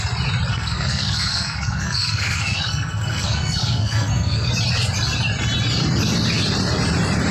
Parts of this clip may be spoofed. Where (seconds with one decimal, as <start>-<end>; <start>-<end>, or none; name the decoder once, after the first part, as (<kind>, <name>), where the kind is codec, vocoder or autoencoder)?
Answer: 0.5-4.5 (codec, SNAC)